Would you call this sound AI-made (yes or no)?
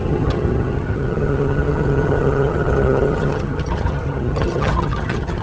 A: yes